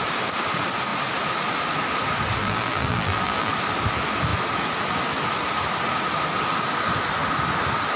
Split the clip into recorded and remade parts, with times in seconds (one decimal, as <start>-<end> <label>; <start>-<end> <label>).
0.0-2.4 recorded; 2.4-3.5 remade; 3.5-8.0 recorded